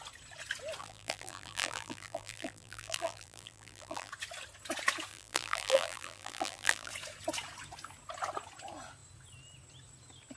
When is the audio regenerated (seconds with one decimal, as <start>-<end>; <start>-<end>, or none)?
0.8-4.1; 5.1-6.9